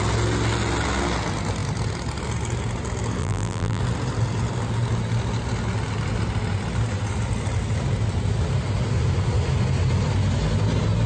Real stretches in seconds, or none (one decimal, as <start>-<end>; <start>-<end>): 0.0-3.2; 3.8-11.1